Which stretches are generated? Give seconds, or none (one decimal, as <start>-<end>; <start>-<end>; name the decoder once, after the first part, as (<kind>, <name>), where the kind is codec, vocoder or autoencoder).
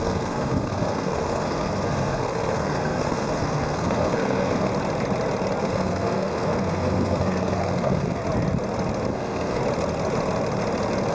0.0-4.7 (codec, SNAC); 5.6-8.2; 9.1-9.6